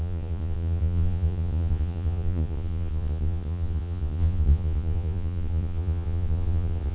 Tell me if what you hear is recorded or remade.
remade